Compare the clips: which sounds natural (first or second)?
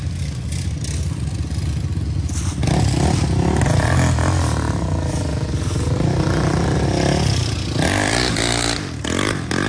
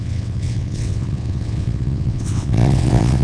first